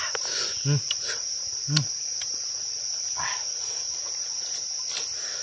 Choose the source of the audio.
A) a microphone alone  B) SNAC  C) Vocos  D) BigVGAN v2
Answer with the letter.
A